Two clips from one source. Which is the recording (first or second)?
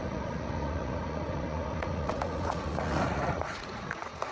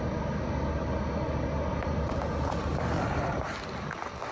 second